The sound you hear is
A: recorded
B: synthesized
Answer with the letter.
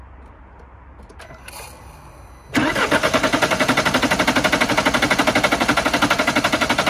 A